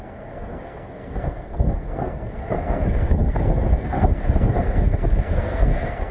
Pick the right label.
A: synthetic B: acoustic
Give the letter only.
A